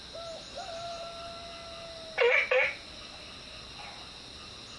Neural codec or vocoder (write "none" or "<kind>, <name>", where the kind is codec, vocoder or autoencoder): none